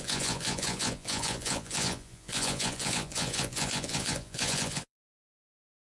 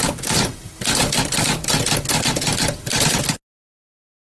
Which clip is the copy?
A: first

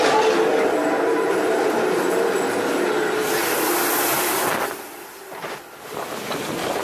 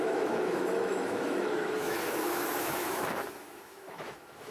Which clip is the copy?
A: second